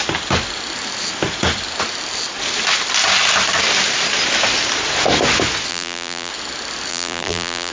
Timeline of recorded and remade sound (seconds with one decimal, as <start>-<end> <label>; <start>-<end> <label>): 0.0-5.7 recorded; 5.7-6.3 remade; 6.3-6.9 recorded; 6.9-7.7 remade